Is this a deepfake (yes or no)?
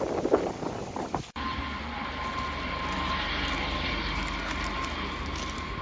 no